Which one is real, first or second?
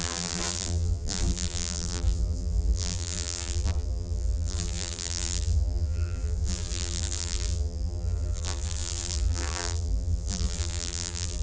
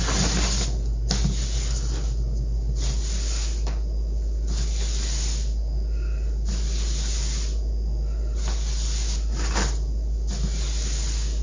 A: second